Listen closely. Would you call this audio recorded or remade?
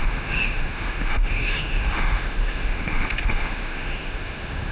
remade